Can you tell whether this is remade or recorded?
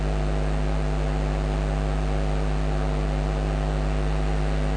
recorded